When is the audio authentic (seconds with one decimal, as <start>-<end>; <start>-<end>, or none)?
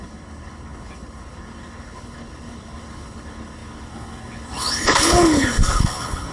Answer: none